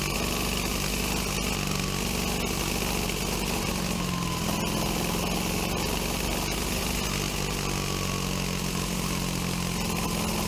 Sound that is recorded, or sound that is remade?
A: recorded